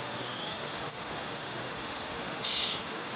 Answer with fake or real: fake